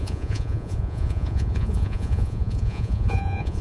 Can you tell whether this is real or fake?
fake